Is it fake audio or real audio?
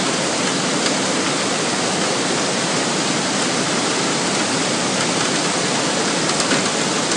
real